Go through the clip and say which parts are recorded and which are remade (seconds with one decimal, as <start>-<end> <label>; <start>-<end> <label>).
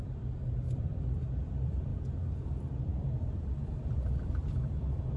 0.0-1.9 remade; 1.9-2.5 recorded; 2.5-5.2 remade